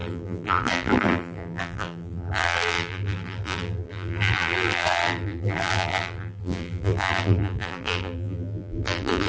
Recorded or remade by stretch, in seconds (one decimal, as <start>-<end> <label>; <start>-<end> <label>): 0.0-9.3 remade

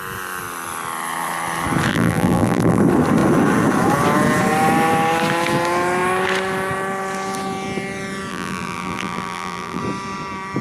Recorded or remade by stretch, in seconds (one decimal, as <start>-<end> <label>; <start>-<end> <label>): 0.0-1.9 recorded; 1.9-2.8 remade; 2.8-8.3 recorded; 8.3-9.8 remade; 9.8-10.6 recorded

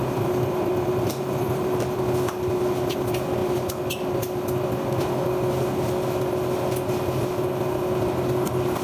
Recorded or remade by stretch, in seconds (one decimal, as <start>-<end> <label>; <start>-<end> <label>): 0.0-0.5 recorded; 0.5-2.0 remade; 2.0-8.8 recorded